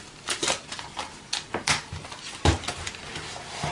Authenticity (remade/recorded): recorded